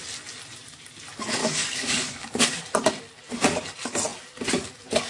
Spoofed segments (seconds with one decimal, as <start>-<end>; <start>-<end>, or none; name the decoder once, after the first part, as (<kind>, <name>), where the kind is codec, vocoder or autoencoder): 1.4-2.6 (codec, DAC)